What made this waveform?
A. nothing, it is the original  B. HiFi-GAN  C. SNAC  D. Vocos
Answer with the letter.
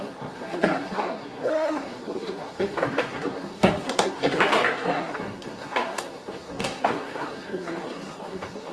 C